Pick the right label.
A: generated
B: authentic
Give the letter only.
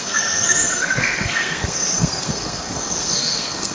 A